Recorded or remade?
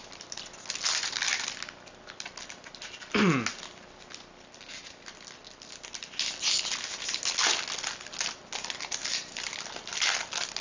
recorded